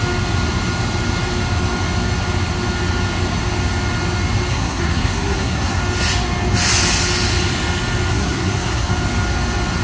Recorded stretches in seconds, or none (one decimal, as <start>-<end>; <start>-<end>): 0.0-4.5; 5.8-8.1; 8.9-9.8